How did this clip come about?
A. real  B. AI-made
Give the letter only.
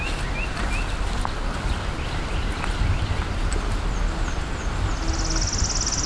A